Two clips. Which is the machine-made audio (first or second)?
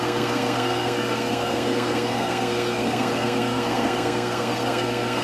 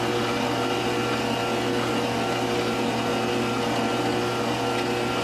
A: first